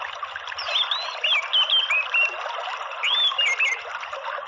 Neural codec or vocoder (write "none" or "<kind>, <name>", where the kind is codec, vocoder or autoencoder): none